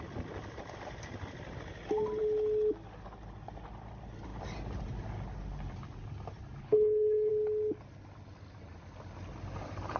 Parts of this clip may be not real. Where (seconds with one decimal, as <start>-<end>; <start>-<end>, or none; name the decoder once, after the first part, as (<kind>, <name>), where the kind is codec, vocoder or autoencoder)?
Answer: 6.6-7.3 (codec, HILCodec)